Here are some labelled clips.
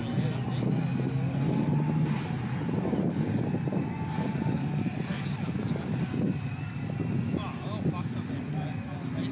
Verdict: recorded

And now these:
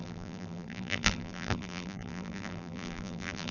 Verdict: remade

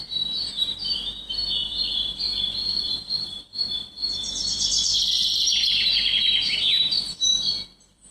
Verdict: remade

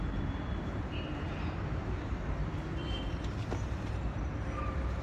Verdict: remade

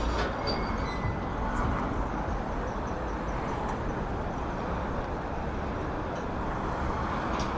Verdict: recorded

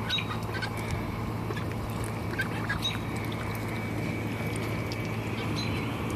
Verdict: recorded